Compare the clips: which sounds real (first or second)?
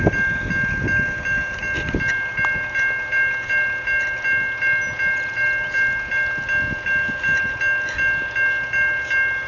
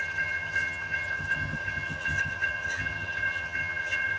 first